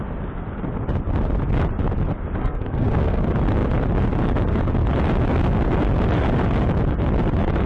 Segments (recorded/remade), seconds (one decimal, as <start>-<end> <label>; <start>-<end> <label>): 0.0-2.4 recorded; 2.4-3.2 remade; 3.2-7.7 recorded